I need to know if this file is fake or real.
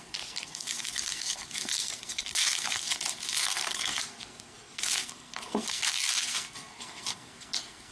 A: fake